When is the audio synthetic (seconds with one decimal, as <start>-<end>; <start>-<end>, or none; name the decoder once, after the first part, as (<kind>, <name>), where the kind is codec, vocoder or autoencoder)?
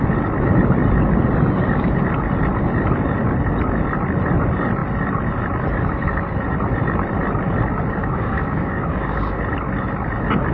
8.0-9.4 (codec, DAC)